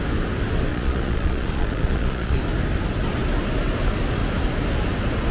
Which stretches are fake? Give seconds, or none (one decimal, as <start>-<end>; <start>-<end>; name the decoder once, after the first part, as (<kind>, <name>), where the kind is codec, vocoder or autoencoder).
0.7-2.4 (vocoder, Vocos)